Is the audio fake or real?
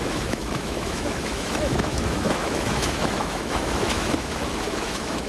fake